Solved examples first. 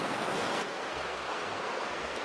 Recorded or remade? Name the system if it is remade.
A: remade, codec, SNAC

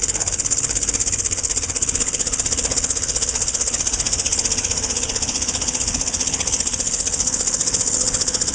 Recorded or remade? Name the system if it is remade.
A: remade, codec, HILCodec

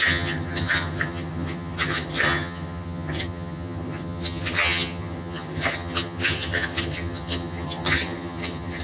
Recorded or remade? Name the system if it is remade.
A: remade, vocoder, HiFi-GAN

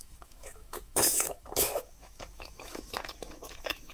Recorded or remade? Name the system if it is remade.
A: remade, autoencoder, DAC-VAE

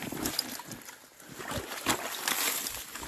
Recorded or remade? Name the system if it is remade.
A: recorded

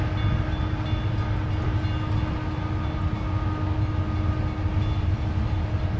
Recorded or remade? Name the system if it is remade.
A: recorded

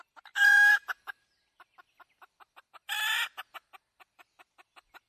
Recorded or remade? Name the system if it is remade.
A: recorded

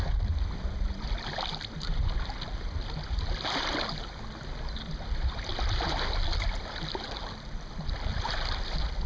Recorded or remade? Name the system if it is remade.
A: recorded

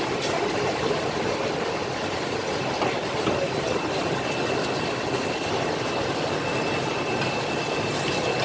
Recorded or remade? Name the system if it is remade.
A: recorded